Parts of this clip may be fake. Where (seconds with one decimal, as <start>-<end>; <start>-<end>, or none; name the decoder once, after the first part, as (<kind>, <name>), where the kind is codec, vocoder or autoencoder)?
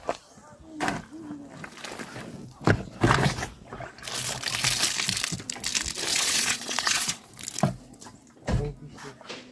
6.1-7.3 (vocoder, Vocos)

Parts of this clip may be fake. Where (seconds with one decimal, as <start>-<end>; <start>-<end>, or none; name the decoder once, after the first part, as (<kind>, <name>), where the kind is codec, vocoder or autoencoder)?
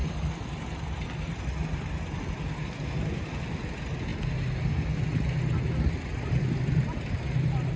none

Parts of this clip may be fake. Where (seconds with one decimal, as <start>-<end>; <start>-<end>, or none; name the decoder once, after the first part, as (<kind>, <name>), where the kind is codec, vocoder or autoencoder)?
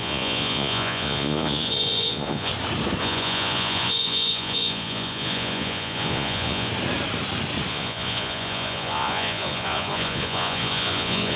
0.0-2.5 (vocoder, Vocos); 3.0-6.7; 7.7-11.4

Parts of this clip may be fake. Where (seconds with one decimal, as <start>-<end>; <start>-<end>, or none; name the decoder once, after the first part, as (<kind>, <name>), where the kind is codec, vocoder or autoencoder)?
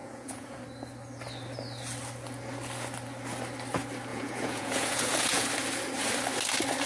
0.0-0.6 (vocoder, Vocos); 4.1-5.5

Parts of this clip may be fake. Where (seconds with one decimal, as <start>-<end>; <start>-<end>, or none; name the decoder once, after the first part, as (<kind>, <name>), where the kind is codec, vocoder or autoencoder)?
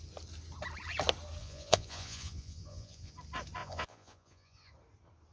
1.4-3.1 (vocoder, Vocos); 3.6-4.7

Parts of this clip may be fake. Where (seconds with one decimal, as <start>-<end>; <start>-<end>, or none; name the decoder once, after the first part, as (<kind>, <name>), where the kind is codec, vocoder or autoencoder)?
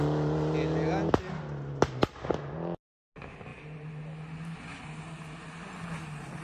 none